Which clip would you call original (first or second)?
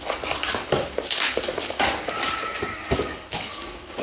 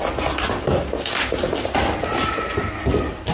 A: second